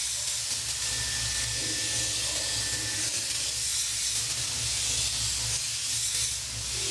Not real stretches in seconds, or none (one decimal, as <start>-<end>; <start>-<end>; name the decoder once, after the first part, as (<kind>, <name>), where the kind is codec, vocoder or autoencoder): none